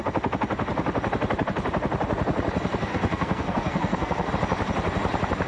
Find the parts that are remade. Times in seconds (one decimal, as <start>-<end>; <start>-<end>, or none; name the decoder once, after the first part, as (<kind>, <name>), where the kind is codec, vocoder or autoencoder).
2.9-4.3 (codec, SNAC)